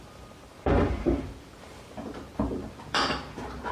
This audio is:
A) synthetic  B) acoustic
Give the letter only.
A